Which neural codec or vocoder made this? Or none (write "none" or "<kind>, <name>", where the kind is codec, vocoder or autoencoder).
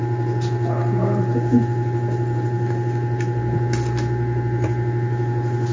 none